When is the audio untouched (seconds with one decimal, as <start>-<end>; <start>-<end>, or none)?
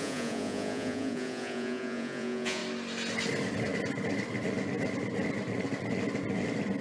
2.6-6.8